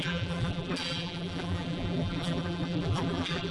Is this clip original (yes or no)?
no